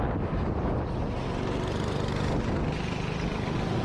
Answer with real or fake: real